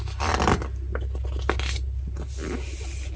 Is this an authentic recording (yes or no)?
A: yes